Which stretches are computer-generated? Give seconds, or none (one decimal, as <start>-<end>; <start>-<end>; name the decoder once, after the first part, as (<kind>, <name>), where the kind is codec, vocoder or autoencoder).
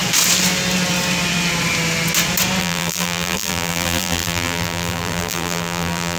2.6-6.2 (vocoder, BigVGAN v2)